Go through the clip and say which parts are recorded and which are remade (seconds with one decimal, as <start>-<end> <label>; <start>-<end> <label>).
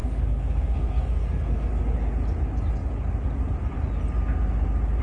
0.0-1.7 remade; 1.7-5.0 recorded